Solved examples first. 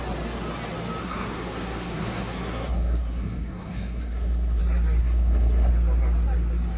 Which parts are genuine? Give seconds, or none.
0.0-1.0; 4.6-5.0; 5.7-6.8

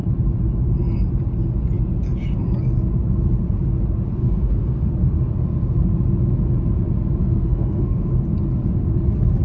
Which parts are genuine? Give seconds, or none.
0.0-4.2; 4.9-7.2; 8.1-9.4

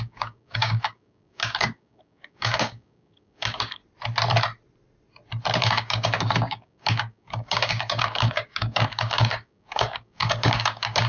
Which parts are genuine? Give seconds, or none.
3.8-5.6

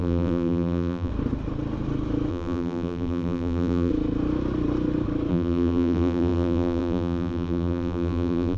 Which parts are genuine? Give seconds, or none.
1.1-2.3; 3.9-5.3

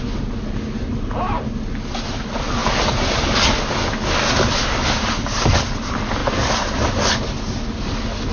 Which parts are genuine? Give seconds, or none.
0.0-8.3

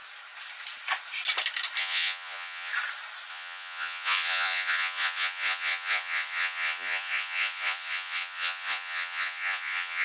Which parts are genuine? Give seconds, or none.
0.0-1.8; 2.7-3.3

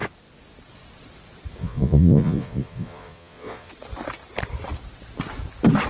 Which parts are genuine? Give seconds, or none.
0.0-1.6; 3.7-5.9

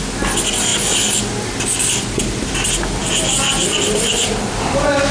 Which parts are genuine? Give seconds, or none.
0.0-5.1